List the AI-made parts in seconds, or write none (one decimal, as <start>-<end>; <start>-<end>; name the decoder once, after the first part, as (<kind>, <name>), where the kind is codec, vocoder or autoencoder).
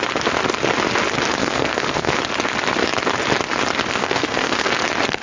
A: 1.4-2.2 (codec, SNAC); 3.9-4.7